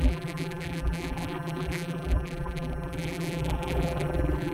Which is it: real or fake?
fake